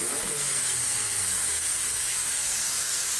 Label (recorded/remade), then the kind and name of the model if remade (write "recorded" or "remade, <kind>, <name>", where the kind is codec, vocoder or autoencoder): remade, codec, SNAC